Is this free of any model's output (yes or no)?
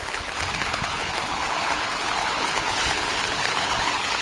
no